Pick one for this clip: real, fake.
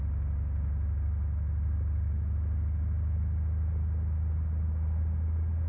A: real